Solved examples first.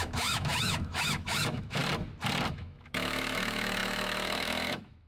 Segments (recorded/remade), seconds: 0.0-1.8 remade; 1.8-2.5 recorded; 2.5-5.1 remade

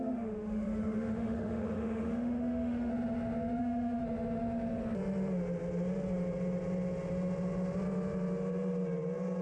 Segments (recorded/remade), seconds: 0.0-2.9 remade; 2.9-3.6 recorded; 3.6-4.0 remade; 4.0-9.4 recorded

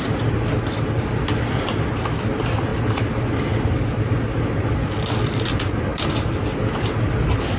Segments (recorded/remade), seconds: 0.0-7.6 recorded

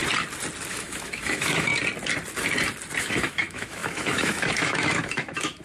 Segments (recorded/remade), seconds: 0.0-0.7 recorded; 0.7-1.7 remade; 1.7-3.0 recorded; 3.0-5.6 remade

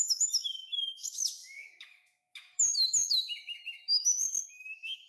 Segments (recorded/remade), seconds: 0.0-5.1 remade

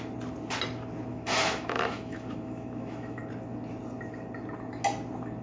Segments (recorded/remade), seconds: 0.0-1.1 recorded; 1.1-3.2 remade; 3.2-5.4 recorded

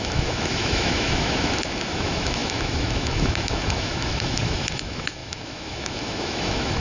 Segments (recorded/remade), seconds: 0.0-6.8 remade